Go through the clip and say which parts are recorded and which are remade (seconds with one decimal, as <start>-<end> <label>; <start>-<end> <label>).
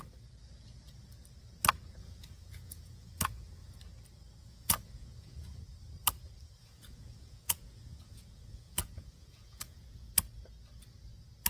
0.0-2.0 recorded; 2.0-3.8 remade; 3.8-4.4 recorded; 4.4-5.6 remade; 5.6-6.6 recorded; 6.6-10.1 remade; 10.1-11.5 recorded